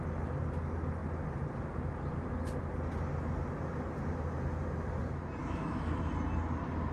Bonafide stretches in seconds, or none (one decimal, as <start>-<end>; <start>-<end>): 0.0-5.4; 6.1-6.9